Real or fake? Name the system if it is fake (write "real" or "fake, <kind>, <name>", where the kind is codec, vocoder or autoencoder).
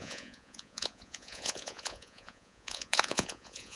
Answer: fake, vocoder, Vocos